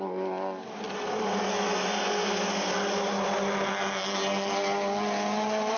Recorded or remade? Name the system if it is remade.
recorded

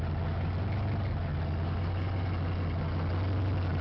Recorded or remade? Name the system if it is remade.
recorded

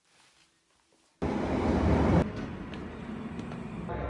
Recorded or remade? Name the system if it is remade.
recorded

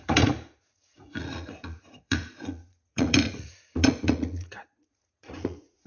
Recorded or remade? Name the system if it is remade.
remade, vocoder, Vocos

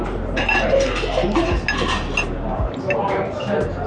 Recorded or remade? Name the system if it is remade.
recorded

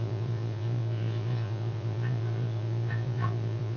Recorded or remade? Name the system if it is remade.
remade, vocoder, Vocos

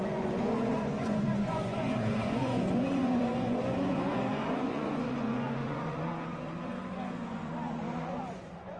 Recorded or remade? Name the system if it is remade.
remade, vocoder, Vocos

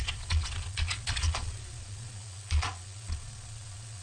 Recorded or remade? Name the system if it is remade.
remade, vocoder, Vocos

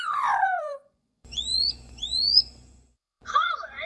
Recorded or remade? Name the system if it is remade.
remade, vocoder, Vocos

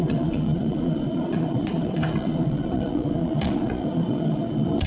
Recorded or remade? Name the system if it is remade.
remade, vocoder, Vocos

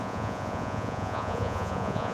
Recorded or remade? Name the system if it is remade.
remade, vocoder, Vocos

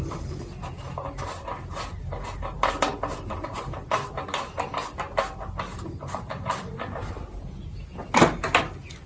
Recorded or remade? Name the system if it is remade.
recorded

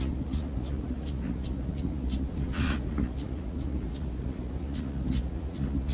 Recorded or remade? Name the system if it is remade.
remade, vocoder, Vocos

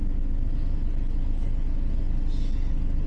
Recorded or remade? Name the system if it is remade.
recorded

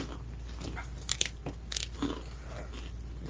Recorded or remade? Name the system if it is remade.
recorded